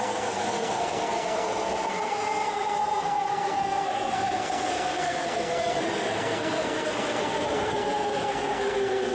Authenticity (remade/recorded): remade